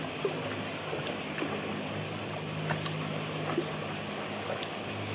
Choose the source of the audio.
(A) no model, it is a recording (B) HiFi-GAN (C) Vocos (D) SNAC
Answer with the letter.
A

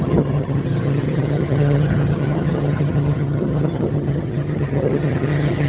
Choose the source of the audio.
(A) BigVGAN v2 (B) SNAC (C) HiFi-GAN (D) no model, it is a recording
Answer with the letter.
C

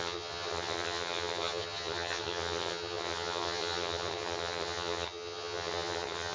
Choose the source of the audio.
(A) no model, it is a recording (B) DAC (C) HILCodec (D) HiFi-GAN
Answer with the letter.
D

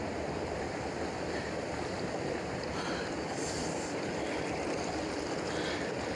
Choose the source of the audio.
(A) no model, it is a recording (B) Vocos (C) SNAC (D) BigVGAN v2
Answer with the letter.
A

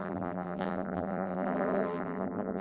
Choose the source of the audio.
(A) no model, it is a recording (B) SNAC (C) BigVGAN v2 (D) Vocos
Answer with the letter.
C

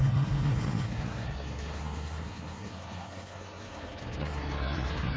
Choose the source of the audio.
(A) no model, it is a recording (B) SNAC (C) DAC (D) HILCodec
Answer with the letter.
B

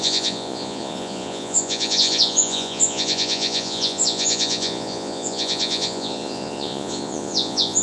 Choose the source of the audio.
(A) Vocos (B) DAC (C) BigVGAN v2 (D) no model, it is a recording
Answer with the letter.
A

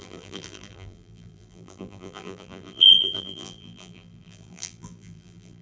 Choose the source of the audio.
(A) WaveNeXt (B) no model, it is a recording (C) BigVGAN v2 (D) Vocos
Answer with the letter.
C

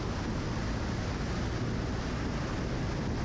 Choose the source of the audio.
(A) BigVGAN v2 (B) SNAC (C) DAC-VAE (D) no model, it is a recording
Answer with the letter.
D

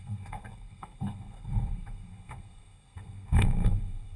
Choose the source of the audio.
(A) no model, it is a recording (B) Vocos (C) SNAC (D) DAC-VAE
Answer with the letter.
C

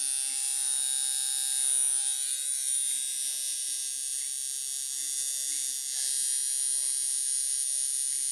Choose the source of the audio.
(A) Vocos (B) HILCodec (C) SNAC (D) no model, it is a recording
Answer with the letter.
D